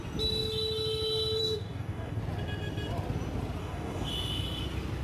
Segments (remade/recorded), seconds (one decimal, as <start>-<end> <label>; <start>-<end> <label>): 0.0-1.4 recorded; 1.4-2.2 remade; 2.2-3.6 recorded; 3.6-4.1 remade; 4.1-5.0 recorded